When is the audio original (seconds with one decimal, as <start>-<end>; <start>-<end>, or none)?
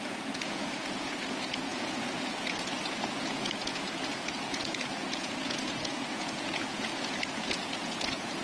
none